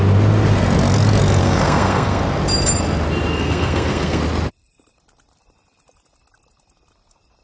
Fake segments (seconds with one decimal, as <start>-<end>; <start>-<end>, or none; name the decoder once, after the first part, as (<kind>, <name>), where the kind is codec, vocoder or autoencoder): 1.4-2.2 (codec, SNAC); 3.3-4.2